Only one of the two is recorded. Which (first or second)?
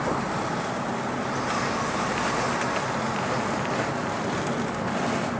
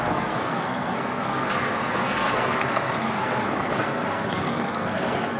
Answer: first